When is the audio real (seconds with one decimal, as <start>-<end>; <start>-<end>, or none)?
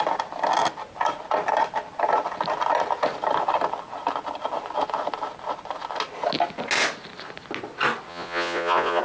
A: 0.0-8.1